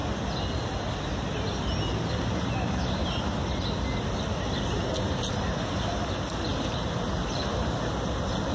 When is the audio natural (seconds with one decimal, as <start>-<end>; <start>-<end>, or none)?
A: 0.0-6.5; 7.1-8.5